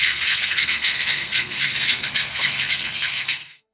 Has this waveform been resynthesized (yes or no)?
yes